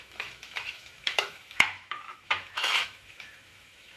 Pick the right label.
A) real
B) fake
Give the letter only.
B